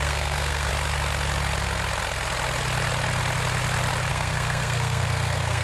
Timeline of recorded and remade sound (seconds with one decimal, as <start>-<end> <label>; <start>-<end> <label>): 0.0-0.7 remade; 0.7-4.1 recorded; 4.1-5.6 remade